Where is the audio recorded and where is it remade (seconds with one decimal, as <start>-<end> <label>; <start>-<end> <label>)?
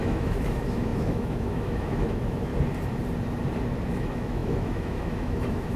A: 0.0-2.5 remade; 2.5-3.8 recorded; 3.8-5.8 remade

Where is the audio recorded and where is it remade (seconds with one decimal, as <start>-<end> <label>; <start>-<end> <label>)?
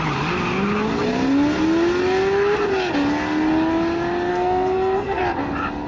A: 0.0-4.3 recorded; 4.3-5.2 remade; 5.2-5.9 recorded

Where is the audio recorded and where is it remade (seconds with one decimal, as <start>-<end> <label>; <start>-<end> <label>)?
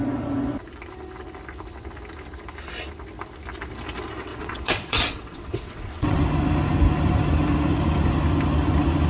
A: 0.0-4.3 recorded; 4.3-6.2 remade; 6.2-9.1 recorded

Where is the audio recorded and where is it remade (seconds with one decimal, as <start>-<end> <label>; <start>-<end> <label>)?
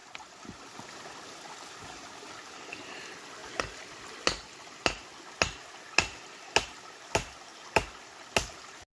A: 0.0-8.9 recorded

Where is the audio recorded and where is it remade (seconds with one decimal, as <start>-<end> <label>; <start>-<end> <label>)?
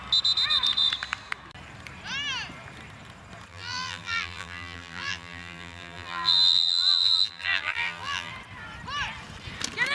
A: 0.0-3.5 recorded; 3.5-8.3 remade; 8.3-9.9 recorded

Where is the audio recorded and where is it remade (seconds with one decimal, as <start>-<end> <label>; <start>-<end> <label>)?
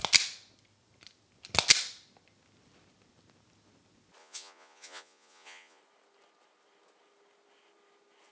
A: 0.0-4.2 recorded; 4.2-5.8 remade; 5.8-8.3 recorded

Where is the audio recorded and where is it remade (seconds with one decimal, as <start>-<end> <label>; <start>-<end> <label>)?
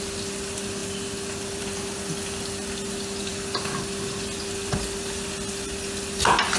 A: 0.0-6.6 recorded